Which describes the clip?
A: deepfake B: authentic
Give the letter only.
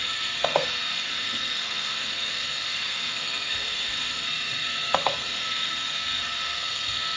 A